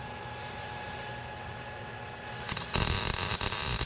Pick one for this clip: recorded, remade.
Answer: recorded